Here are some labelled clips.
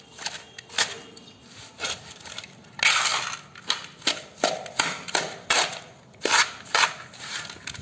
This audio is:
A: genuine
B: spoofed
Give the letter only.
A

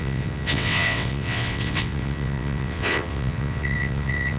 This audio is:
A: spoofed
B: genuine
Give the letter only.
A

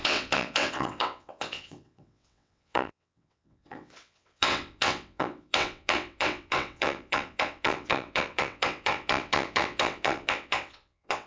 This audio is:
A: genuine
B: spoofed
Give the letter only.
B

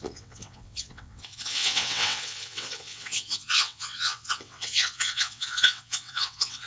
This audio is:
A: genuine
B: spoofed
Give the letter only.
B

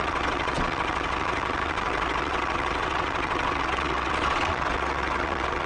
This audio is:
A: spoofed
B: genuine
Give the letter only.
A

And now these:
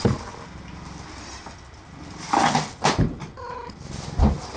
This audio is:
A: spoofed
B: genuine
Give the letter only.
B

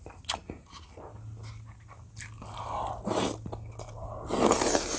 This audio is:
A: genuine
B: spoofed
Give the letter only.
A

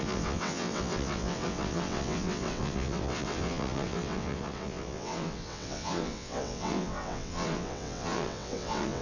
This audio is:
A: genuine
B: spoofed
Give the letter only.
B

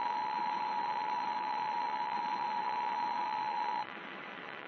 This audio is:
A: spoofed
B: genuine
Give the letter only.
A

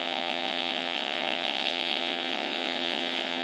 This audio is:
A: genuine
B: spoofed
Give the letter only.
B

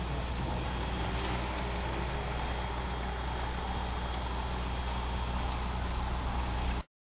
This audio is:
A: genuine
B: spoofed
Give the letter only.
A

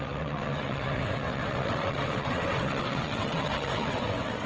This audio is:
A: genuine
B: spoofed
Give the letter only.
B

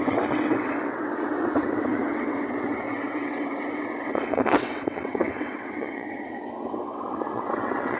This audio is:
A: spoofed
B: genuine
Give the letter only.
A